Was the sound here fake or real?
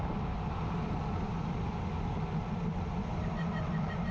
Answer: real